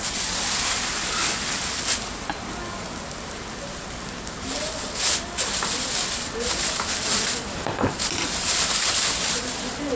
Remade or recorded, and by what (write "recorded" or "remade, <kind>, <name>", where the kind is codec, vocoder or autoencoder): recorded